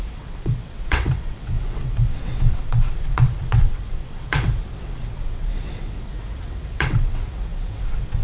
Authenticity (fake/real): fake